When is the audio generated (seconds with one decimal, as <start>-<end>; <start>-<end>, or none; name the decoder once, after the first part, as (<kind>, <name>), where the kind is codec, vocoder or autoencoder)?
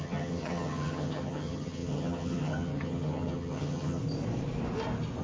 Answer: 0.0-4.0 (vocoder, HiFi-GAN)